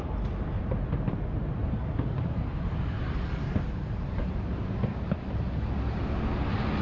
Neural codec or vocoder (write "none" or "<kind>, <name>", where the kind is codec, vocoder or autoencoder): none